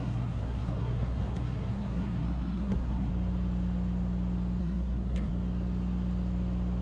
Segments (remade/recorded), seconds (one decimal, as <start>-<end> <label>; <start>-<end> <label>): 0.0-3.1 remade; 3.1-4.6 recorded; 4.6-5.3 remade; 5.3-6.8 recorded